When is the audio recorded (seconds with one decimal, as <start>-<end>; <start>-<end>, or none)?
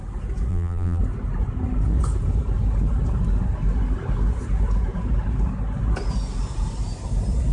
0.0-0.5; 1.0-7.5